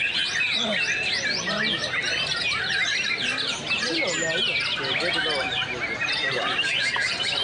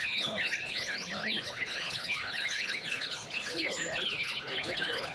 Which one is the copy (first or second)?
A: second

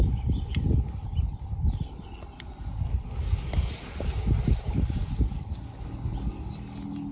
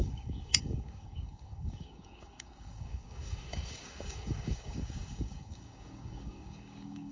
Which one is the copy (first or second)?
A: second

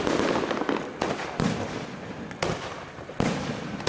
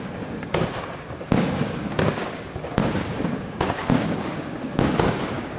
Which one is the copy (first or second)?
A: second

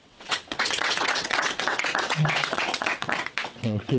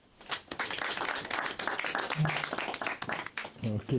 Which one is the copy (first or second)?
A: first